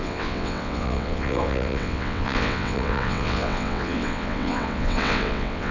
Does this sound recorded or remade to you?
remade